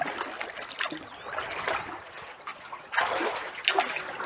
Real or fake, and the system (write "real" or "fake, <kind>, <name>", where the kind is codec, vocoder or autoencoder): real